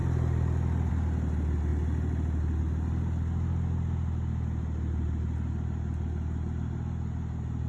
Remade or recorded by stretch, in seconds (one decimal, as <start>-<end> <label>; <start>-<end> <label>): 0.0-7.7 recorded